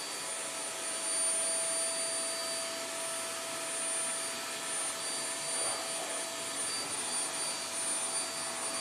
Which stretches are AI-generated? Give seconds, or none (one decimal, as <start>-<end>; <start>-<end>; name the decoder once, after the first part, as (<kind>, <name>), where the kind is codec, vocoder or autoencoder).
none